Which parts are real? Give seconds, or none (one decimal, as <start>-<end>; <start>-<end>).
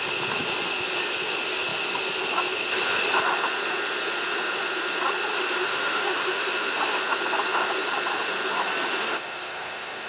0.0-5.3; 7.0-9.0